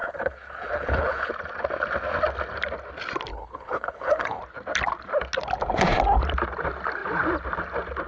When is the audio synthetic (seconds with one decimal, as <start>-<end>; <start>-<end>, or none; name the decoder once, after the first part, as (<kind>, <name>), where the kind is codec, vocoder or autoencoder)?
0.0-1.3 (codec, HILCodec); 3.3-4.4